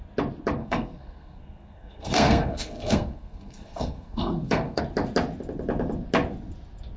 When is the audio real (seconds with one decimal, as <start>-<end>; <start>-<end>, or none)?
0.0-0.6; 4.8-7.0